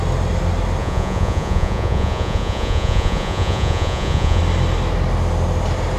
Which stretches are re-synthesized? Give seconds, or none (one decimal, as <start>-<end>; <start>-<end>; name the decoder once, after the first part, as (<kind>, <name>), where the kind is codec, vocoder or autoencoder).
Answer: 0.8-4.4 (vocoder, Vocos)